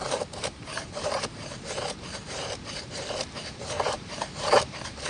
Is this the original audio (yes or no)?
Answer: no